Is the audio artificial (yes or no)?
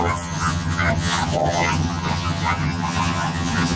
yes